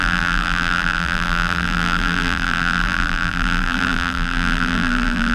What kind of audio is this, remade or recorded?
remade